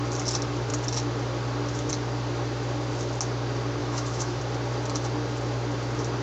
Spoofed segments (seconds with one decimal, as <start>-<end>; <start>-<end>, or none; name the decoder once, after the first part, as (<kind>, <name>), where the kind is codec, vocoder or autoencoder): 3.8-4.4 (autoencoder, DAC-VAE)